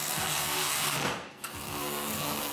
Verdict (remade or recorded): remade